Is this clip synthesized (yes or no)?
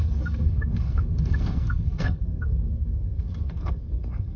yes